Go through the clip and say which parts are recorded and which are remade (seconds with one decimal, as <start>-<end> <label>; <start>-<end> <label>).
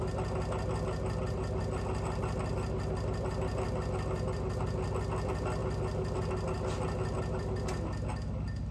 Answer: 0.0-8.7 recorded